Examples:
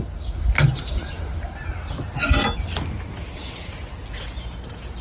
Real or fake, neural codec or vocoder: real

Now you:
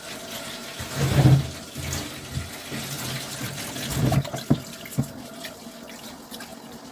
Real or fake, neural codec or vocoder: real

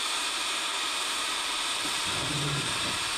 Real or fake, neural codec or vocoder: fake, vocoder, BigVGAN v2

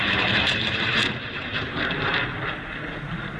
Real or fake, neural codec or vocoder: fake, vocoder, BigVGAN v2